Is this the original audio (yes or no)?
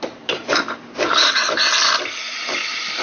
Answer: no